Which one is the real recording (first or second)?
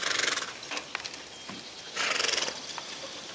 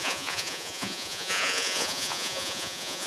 first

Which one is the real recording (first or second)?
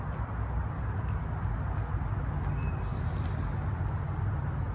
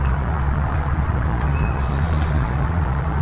first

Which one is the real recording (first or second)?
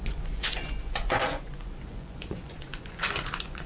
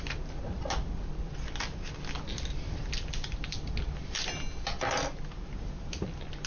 second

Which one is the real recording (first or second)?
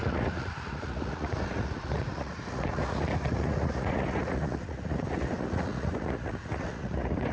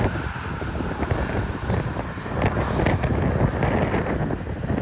second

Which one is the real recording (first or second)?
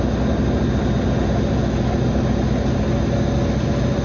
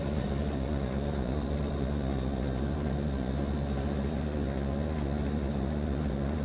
first